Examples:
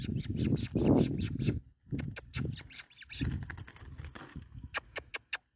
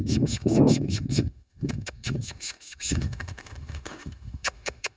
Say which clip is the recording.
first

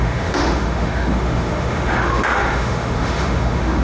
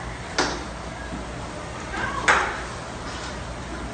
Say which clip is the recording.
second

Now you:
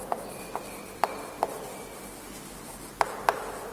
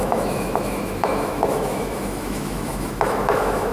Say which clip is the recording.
first